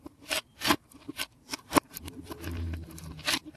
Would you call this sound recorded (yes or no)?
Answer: no